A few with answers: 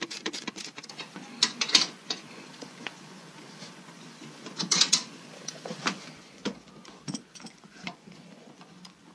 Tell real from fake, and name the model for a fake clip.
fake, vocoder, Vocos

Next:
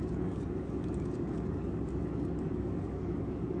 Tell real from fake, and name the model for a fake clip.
fake, codec, DAC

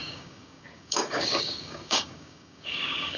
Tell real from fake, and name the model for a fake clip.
fake, codec, DAC